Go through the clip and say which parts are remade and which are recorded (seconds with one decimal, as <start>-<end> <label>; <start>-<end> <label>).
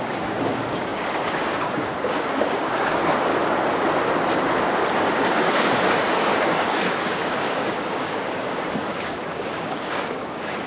0.0-3.3 remade; 3.3-5.2 recorded; 5.2-10.7 remade